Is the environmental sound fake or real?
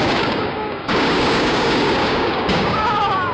fake